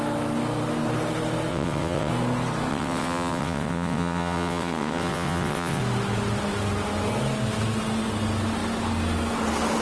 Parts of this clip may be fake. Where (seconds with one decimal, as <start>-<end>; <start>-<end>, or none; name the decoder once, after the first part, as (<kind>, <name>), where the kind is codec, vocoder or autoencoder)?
1.5-2.1 (vocoder, WaveNeXt); 2.7-5.8